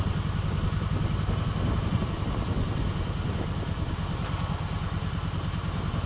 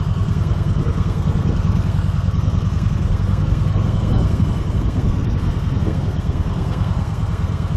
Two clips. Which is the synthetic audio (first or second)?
second